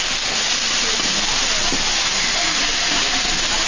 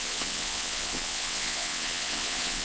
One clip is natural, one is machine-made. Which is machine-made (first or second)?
second